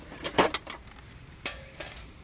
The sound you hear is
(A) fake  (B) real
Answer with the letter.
B